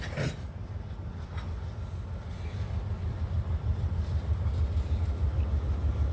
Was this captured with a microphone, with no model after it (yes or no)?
yes